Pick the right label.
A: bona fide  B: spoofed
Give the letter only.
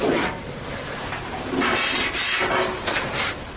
A